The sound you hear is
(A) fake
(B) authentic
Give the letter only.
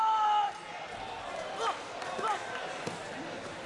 B